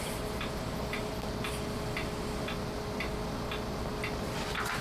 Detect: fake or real real